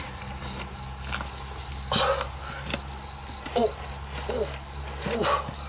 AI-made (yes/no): no